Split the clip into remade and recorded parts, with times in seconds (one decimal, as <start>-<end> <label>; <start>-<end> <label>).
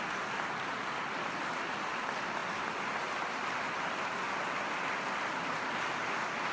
0.0-6.5 recorded